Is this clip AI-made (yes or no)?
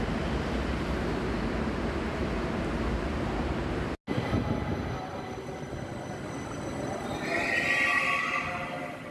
no